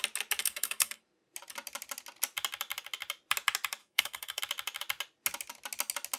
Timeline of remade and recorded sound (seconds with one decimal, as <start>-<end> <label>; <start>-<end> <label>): 0.0-0.4 recorded; 0.4-1.0 remade; 1.0-3.8 recorded; 3.8-4.4 remade; 4.4-6.2 recorded